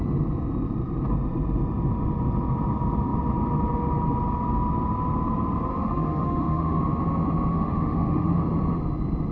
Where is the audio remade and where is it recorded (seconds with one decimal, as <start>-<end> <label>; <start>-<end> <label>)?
0.0-5.7 recorded; 5.7-6.8 remade; 6.8-7.5 recorded; 7.5-8.4 remade; 8.4-9.3 recorded